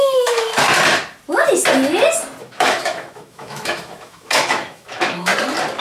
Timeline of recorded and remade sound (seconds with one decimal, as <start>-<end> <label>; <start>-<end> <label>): 0.0-0.5 remade; 0.5-2.4 recorded; 2.4-5.3 remade; 5.3-5.8 recorded